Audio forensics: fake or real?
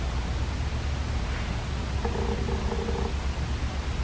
real